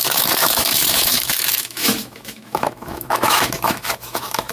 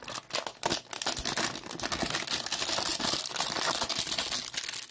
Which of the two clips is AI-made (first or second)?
first